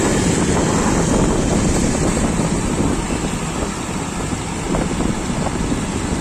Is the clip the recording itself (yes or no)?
yes